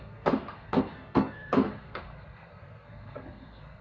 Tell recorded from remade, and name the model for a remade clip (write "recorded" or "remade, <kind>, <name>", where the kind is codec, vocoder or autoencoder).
remade, codec, SNAC